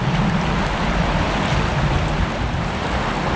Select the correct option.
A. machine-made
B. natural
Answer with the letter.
B